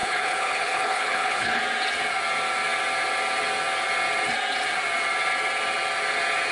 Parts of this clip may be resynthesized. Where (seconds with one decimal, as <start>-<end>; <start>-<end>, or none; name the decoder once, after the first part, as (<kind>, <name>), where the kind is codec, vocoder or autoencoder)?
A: 0.0-1.6 (codec, HILCodec)